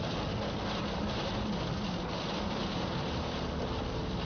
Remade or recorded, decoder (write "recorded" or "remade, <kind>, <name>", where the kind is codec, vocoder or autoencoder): recorded